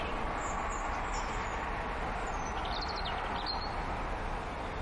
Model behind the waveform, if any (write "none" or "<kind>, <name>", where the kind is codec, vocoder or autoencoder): none